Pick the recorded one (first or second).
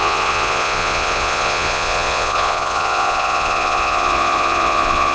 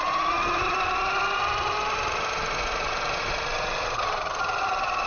second